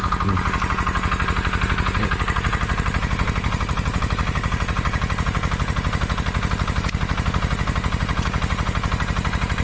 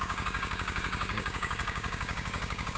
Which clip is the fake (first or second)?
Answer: second